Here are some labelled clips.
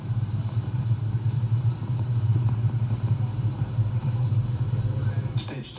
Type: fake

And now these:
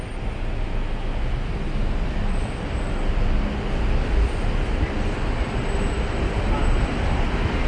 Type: real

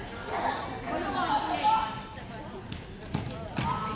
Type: real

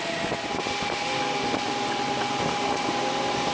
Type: real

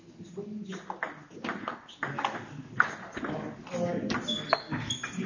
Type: real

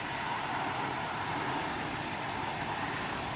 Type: fake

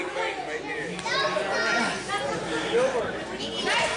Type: real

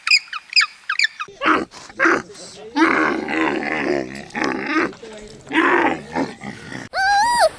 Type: real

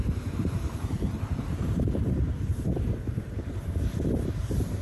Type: fake